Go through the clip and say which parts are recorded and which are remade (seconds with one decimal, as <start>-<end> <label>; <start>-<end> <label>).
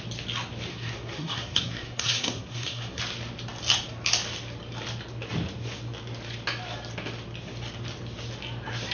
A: 0.0-0.7 recorded; 0.7-3.0 remade; 3.0-8.9 recorded